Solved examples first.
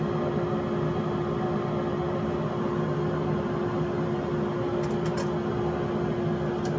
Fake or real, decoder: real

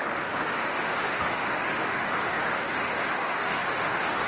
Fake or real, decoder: fake, autoencoder, DAC-VAE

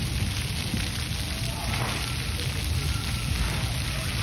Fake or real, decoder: real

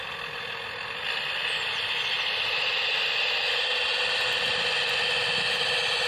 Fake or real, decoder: real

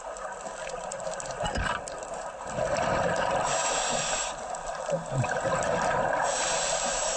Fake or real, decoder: real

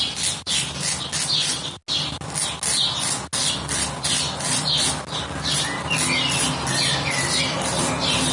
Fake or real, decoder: real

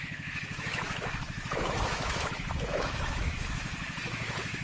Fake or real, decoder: fake, autoencoder, DAC-VAE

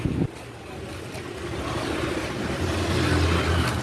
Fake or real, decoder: real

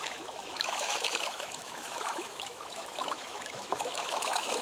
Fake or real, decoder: fake, autoencoder, DAC-VAE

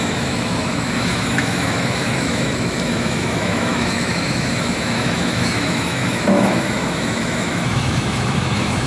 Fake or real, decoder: fake, autoencoder, DAC-VAE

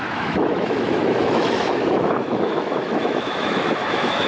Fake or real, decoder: fake, autoencoder, DAC-VAE